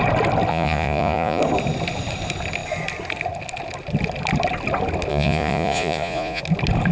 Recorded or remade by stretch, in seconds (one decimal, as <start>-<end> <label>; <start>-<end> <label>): 0.0-0.5 recorded; 0.5-1.4 remade; 1.4-5.1 recorded; 5.1-6.4 remade; 6.4-6.9 recorded